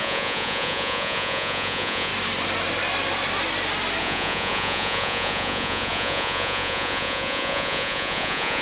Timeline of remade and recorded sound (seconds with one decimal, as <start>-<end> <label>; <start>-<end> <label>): 0.0-2.1 remade; 2.1-4.0 recorded; 4.0-8.6 remade